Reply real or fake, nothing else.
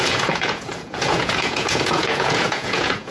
fake